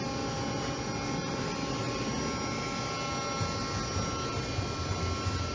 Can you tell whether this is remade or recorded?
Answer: recorded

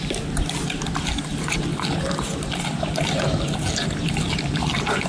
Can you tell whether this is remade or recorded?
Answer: recorded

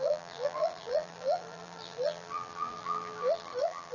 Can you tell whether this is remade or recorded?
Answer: remade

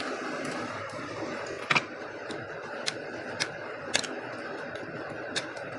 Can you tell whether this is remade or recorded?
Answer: recorded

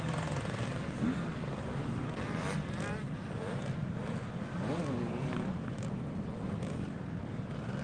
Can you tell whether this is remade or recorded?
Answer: recorded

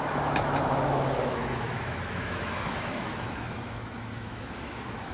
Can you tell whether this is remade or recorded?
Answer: remade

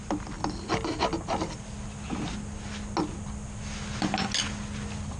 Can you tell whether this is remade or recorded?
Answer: recorded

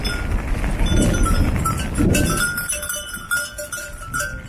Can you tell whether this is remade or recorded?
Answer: recorded